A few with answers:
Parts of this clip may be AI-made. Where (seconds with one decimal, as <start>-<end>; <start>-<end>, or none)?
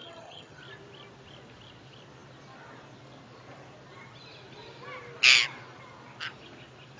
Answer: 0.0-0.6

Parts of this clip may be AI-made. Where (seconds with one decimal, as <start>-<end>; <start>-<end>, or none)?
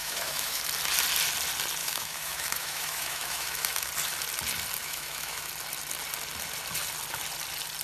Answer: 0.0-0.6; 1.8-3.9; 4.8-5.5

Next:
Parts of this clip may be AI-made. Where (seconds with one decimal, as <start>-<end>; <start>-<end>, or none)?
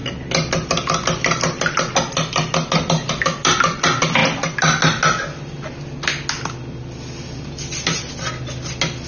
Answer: none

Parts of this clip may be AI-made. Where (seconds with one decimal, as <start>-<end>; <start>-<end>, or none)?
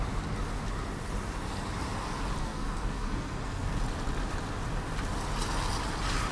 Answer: 2.4-3.8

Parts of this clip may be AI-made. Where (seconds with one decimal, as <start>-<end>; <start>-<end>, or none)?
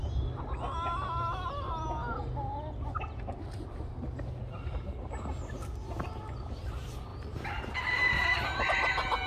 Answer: none